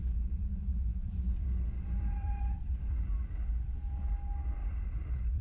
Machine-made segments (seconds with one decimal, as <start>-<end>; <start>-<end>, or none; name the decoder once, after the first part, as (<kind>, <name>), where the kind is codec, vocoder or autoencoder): 0.9-4.1 (vocoder, BigVGAN v2); 4.6-5.4